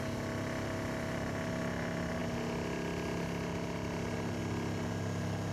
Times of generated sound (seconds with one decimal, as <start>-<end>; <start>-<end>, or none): none